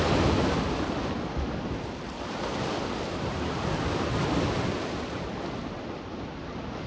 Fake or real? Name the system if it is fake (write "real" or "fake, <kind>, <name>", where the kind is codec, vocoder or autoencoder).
real